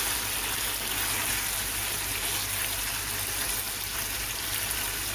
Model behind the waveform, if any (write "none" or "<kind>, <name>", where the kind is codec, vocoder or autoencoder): none